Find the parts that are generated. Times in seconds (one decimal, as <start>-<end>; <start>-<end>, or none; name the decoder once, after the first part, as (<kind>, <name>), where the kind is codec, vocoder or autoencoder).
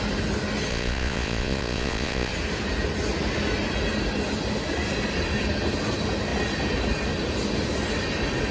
0.7-2.3 (vocoder, Vocos)